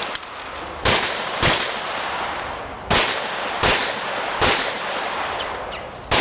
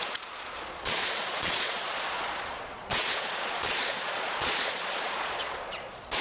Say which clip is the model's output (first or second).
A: second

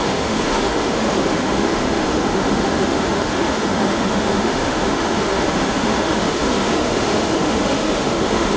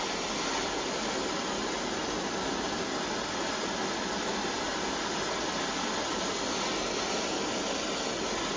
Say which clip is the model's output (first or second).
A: first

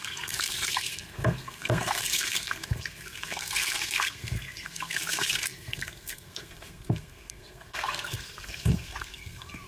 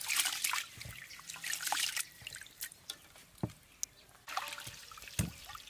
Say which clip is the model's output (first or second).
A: first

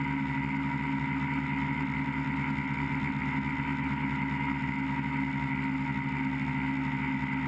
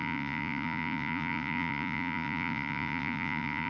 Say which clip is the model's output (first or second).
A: second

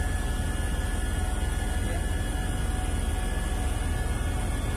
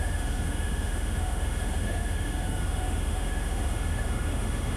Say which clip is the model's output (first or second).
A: second